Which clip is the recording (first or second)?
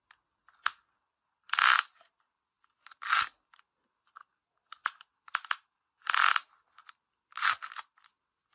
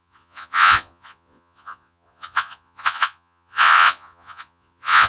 first